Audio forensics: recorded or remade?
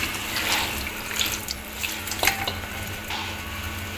recorded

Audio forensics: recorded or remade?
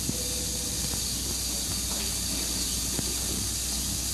recorded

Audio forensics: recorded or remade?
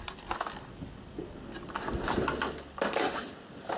recorded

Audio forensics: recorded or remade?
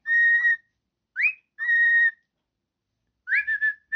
recorded